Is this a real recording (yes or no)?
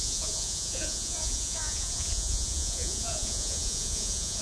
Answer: no